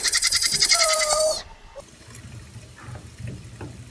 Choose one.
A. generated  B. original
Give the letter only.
A